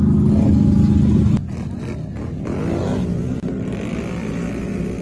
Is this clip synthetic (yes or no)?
no